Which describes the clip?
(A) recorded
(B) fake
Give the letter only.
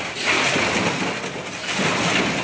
A